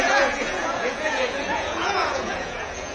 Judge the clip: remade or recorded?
remade